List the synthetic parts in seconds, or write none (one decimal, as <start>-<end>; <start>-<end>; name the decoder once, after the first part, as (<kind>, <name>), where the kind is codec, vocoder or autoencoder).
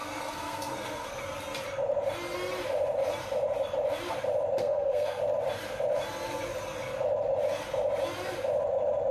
0.0-1.2 (codec, SNAC); 4.6-5.2